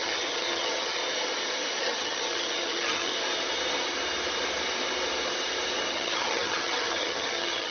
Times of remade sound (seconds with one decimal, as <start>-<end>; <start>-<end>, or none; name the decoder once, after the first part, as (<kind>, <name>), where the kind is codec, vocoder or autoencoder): 0.0-1.0 (vocoder, HiFi-GAN); 1.8-3.1; 5.9-7.7